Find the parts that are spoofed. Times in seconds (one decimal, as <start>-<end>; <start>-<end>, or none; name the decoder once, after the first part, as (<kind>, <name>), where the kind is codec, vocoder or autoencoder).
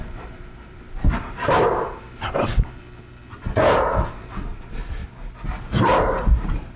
0.0-2.5 (vocoder, BigVGAN v2); 3.5-5.0; 5.8-6.8